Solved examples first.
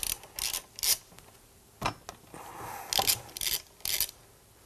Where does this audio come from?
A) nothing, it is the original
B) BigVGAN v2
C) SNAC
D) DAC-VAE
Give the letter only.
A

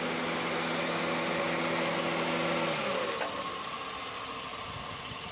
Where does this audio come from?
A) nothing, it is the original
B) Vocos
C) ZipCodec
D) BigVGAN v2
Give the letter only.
A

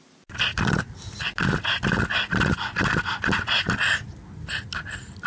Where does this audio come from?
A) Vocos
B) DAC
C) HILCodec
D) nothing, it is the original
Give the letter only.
D